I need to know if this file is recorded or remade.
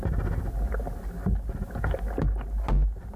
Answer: recorded